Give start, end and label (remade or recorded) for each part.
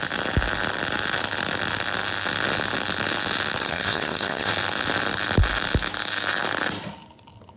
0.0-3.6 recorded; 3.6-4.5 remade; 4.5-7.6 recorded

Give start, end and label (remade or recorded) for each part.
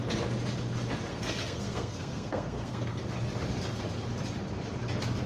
0.0-1.1 recorded; 1.1-3.0 remade; 3.0-5.3 recorded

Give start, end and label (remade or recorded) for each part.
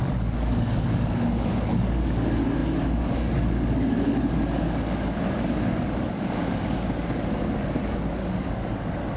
0.0-9.2 remade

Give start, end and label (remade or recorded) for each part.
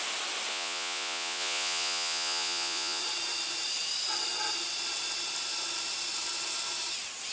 0.0-0.5 recorded; 0.5-3.0 remade; 3.0-7.3 recorded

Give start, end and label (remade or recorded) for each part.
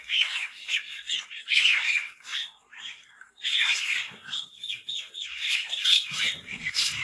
0.0-7.0 remade